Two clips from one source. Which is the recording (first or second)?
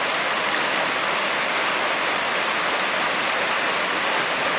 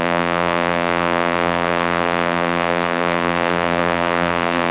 first